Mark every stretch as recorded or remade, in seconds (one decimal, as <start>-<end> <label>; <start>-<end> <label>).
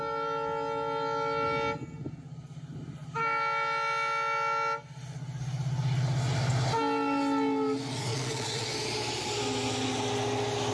0.0-8.1 recorded; 8.1-8.7 remade; 8.7-10.7 recorded